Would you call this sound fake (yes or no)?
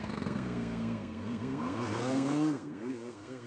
yes